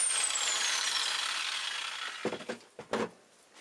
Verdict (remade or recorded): recorded